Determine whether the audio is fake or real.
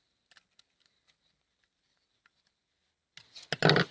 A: real